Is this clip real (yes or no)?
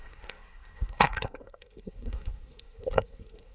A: no